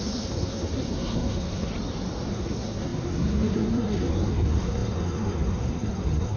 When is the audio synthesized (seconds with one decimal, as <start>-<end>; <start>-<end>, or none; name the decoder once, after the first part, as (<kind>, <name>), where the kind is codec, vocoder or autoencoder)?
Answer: 0.0-1.7 (codec, SNAC); 2.3-6.4

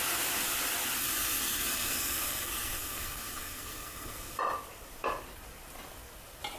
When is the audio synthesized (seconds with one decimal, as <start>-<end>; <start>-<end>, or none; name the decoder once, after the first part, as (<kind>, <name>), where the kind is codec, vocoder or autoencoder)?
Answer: 1.0-4.4 (codec, SNAC)

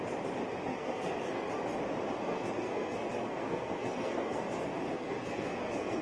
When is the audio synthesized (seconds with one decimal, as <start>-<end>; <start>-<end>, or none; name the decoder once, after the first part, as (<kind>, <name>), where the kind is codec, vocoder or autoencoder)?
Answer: 0.7-1.5 (codec, SNAC); 2.2-6.0

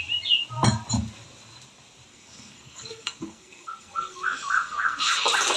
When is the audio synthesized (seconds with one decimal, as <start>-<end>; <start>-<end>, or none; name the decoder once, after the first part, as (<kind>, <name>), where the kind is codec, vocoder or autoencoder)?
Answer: 2.1-5.1 (codec, SNAC)

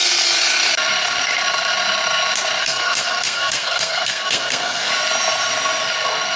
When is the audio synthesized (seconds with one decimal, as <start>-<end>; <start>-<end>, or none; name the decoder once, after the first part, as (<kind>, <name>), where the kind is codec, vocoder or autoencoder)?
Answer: 2.6-4.9 (codec, SNAC)

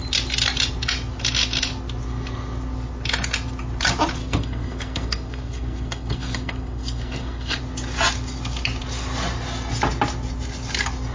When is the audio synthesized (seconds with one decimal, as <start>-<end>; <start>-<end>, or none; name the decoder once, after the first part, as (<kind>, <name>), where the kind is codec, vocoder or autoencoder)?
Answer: 4.2-7.6 (codec, SNAC)

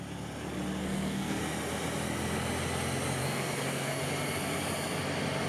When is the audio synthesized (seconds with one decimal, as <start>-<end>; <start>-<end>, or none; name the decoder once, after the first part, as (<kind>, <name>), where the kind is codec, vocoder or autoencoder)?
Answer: 0.8-1.4 (codec, SNAC); 3.2-4.0